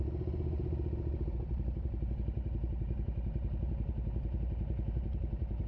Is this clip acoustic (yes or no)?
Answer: yes